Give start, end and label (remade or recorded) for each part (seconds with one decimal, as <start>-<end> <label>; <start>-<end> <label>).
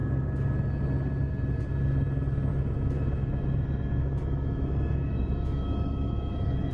0.0-2.5 recorded; 2.5-6.7 remade